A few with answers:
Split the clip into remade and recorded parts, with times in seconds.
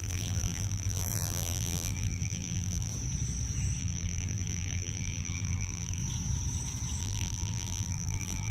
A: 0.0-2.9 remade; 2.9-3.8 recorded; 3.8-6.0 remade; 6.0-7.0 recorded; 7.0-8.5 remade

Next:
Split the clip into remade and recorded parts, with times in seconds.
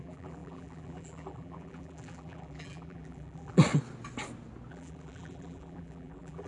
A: 0.0-3.6 remade; 3.6-4.7 recorded; 4.7-6.5 remade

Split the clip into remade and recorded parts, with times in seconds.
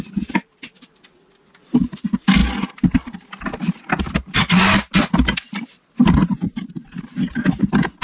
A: 0.0-8.0 recorded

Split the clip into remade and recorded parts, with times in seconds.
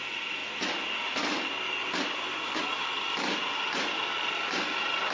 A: 0.0-5.1 recorded